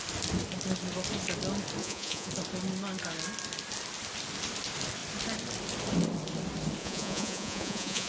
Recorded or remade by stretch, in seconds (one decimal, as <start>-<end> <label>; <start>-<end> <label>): 0.0-1.8 recorded; 1.8-2.3 remade; 2.3-6.8 recorded; 6.8-8.1 remade